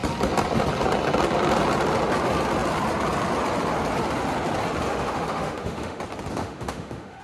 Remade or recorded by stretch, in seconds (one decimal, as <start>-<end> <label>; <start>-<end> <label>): 0.0-4.9 recorded; 4.9-6.0 remade; 6.0-6.4 recorded; 6.4-7.2 remade